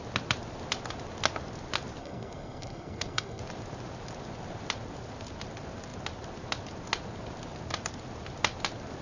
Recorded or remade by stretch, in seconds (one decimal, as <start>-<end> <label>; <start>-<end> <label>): 0.0-2.0 recorded; 2.0-3.4 remade; 3.4-9.0 recorded